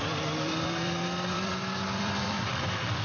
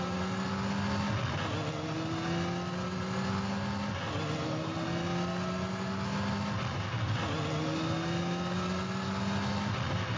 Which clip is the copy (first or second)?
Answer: first